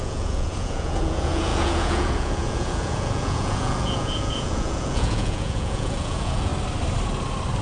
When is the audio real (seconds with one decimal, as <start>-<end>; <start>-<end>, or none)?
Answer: 6.5-7.6